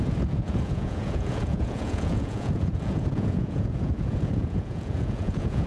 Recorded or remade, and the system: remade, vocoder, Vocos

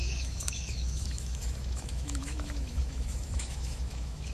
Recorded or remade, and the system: remade, autoencoder, DAC-VAE